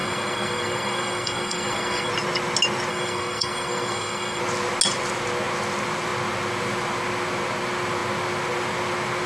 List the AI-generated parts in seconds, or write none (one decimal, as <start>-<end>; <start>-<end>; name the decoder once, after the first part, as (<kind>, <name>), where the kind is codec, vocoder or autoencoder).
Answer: 0.0-2.1 (codec, SNAC); 2.9-4.4